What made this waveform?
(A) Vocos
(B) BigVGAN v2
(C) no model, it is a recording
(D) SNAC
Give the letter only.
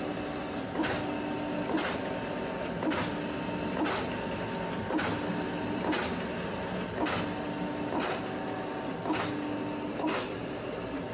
C